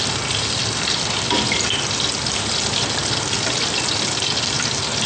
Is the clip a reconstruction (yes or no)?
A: no